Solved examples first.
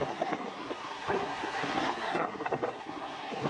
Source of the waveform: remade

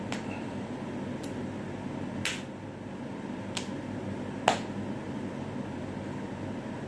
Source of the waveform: recorded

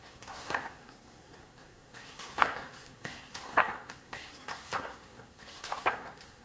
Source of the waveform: remade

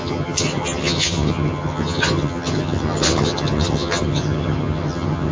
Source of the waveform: remade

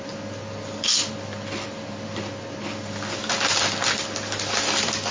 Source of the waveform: recorded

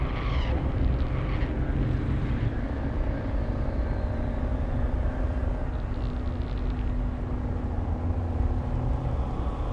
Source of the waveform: recorded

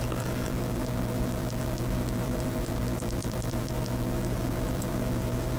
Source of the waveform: remade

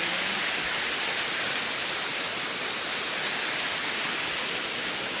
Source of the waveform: recorded